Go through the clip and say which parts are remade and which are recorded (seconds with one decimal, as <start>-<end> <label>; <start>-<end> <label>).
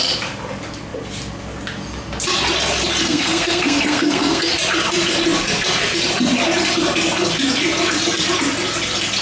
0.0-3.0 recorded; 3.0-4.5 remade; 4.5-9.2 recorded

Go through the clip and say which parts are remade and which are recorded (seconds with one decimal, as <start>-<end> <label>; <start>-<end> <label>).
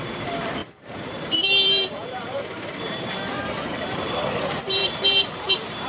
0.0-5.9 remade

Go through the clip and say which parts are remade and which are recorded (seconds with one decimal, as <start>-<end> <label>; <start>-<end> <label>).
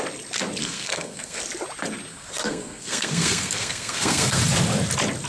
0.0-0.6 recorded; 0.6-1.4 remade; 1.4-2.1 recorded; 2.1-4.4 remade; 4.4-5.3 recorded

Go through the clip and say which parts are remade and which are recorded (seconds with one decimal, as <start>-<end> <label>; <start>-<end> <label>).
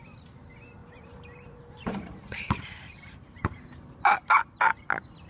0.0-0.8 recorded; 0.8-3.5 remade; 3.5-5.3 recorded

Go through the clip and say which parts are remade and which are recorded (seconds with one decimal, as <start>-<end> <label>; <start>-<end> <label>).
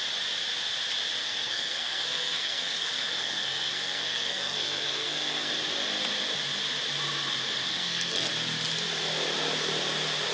0.0-1.2 recorded; 1.2-5.5 remade; 5.5-7.7 recorded; 7.7-8.3 remade; 8.3-10.3 recorded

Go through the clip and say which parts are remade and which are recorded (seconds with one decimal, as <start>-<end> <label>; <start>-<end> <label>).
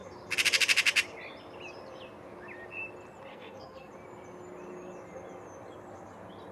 0.0-3.3 recorded; 3.3-3.9 remade; 3.9-6.5 recorded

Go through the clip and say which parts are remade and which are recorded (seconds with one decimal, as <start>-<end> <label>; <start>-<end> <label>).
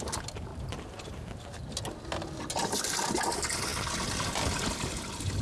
0.0-5.4 recorded